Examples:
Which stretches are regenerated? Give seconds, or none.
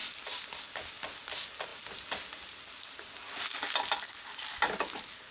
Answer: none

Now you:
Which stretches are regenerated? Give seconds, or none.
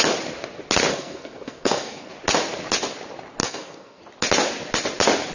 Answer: 0.9-2.1; 3.4-4.0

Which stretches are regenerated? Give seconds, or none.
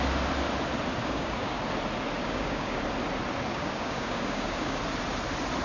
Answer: 1.0-1.6; 2.2-2.8; 3.5-4.8